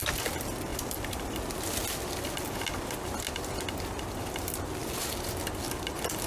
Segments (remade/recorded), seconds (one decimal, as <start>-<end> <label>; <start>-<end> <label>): 0.0-6.3 recorded